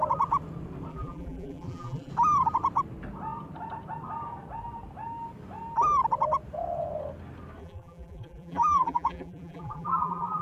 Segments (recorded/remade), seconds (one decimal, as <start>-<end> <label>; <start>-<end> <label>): 0.0-0.9 recorded; 0.9-2.1 remade; 2.1-7.6 recorded; 7.6-10.4 remade